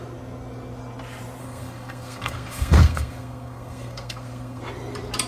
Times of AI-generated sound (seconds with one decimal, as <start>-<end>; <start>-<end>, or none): 1.4-4.6